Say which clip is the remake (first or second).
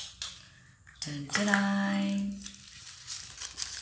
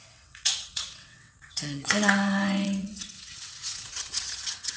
second